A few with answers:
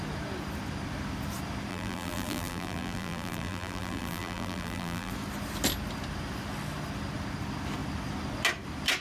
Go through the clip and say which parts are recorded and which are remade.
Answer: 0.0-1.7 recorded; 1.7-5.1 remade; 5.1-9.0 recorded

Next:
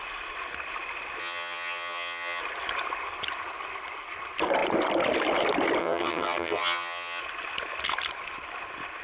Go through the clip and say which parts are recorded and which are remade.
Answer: 0.0-1.2 recorded; 1.2-2.4 remade; 2.4-5.8 recorded; 5.8-7.2 remade; 7.2-9.0 recorded

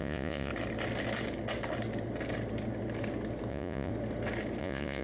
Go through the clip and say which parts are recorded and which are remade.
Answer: 0.0-0.5 remade; 0.5-3.5 recorded; 3.5-3.9 remade; 3.9-4.6 recorded; 4.6-5.0 remade

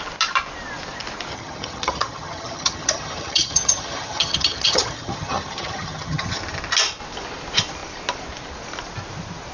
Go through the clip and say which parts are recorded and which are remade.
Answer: 0.0-1.3 recorded; 1.3-6.4 remade; 6.4-9.5 recorded

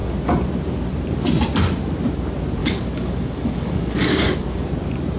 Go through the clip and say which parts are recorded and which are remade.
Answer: 0.0-2.6 recorded; 2.6-4.7 remade; 4.7-5.2 recorded

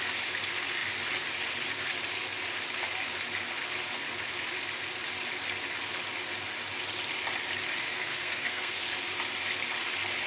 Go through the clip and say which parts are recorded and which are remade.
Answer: 0.0-7.9 recorded; 7.9-8.8 remade; 8.8-10.3 recorded